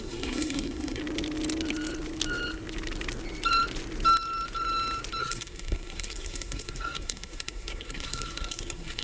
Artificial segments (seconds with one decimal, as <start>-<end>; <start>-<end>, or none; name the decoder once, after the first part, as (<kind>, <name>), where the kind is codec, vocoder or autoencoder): 0.0-1.0 (codec, SNAC); 5.2-9.0